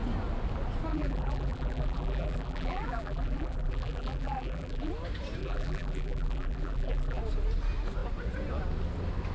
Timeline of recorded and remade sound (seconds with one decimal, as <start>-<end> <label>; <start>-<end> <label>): 0.0-0.9 recorded; 0.9-4.9 remade; 4.9-5.4 recorded; 5.4-7.2 remade; 7.2-9.3 recorded